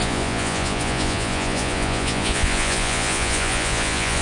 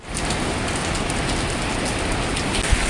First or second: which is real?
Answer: second